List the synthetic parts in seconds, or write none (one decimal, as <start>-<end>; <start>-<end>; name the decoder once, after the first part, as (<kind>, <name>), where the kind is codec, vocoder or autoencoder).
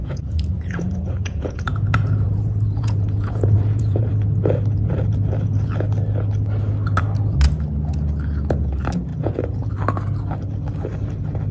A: 0.0-4.1 (vocoder, Vocos); 9.1-9.7